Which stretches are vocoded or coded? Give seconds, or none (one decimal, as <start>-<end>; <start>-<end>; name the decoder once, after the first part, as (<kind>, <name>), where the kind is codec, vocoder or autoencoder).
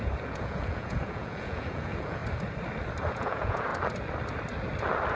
0.0-2.2 (vocoder, Vocos); 3.1-3.7